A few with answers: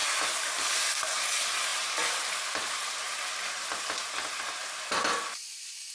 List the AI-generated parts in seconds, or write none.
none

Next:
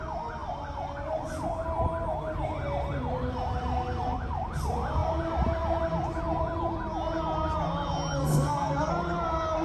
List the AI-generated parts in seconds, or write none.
8.2-8.9 (codec, SNAC)

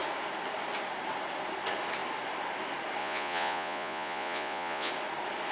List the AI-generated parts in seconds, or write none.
3.0-4.9 (vocoder, Vocos)

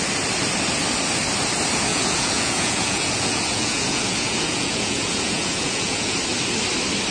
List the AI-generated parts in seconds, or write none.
1.9-6.1 (vocoder, Vocos)